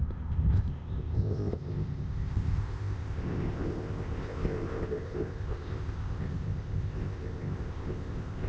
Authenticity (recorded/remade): remade